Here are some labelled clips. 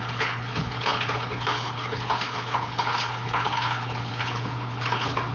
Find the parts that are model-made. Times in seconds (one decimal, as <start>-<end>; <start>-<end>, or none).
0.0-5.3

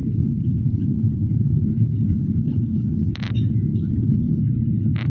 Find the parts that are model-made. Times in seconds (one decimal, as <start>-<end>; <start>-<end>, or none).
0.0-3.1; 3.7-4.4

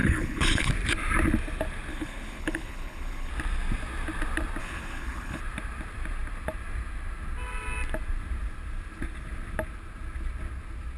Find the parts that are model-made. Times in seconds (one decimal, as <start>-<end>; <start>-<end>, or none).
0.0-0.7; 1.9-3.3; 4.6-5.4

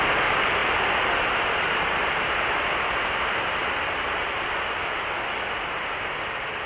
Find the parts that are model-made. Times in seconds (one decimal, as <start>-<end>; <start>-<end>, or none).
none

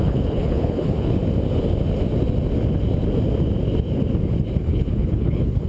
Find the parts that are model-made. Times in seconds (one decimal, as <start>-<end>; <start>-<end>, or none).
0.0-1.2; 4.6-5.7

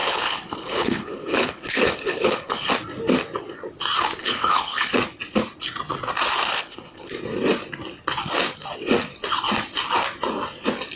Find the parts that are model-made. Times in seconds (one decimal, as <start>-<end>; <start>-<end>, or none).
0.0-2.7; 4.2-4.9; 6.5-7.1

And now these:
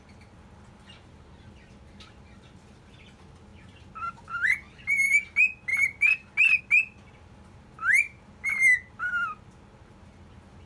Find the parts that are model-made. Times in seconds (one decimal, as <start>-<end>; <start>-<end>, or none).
none

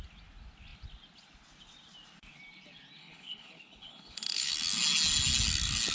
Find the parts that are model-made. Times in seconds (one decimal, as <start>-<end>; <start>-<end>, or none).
3.0-4.5